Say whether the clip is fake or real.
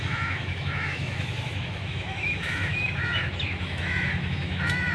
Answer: fake